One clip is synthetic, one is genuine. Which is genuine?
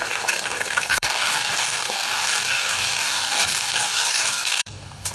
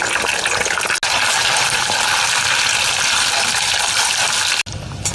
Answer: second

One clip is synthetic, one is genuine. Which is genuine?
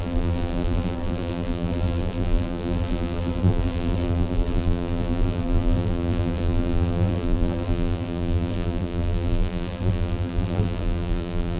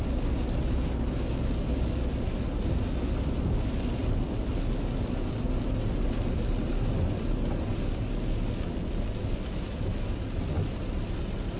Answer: second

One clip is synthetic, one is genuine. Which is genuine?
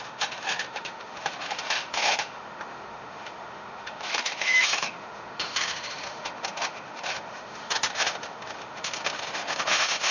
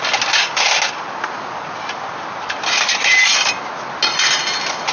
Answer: second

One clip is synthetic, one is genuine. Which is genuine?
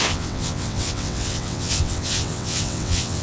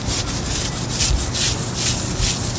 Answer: second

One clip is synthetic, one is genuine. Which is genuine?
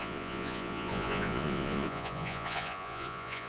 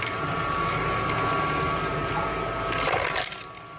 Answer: second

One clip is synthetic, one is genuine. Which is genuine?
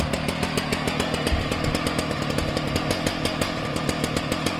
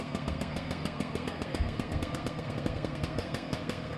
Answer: first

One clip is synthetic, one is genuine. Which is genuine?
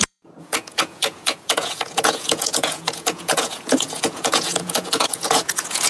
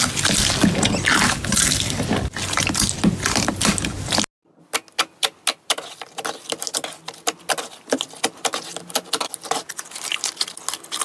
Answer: second